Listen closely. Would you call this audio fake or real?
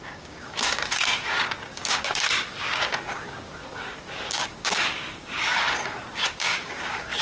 fake